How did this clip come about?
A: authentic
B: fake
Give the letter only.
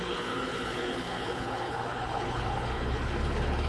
B